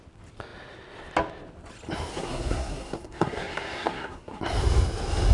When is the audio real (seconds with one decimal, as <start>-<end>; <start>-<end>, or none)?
0.0-2.1; 4.4-5.3